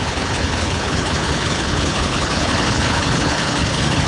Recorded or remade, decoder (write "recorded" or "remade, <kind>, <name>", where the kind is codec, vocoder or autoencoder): remade, codec, HILCodec